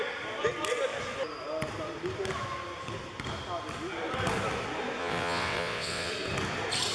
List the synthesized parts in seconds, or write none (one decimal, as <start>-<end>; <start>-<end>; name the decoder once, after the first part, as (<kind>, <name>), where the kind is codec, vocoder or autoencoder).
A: 5.0-6.1 (vocoder, WaveNeXt)